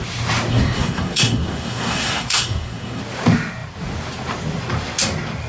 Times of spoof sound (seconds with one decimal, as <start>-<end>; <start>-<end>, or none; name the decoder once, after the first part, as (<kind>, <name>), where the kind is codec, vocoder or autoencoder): 0.5-3.0 (codec, SNAC)